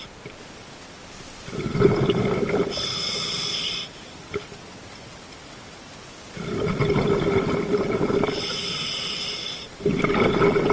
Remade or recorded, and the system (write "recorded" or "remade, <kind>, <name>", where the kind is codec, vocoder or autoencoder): recorded